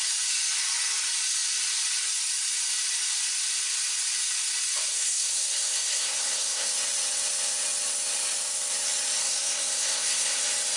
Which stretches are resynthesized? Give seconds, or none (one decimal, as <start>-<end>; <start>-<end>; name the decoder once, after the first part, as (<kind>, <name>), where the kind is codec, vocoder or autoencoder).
4.9-6.7 (codec, SNAC); 9.2-10.4